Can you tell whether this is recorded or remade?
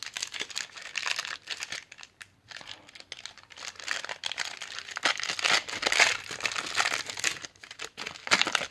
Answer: recorded